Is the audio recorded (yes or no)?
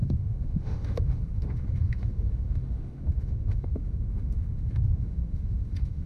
no